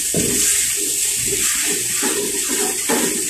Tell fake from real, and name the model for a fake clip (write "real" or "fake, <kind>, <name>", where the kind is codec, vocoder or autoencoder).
real